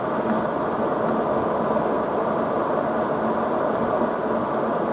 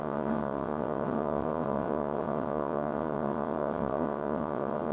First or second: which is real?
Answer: first